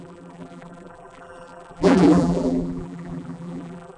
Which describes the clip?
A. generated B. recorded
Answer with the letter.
A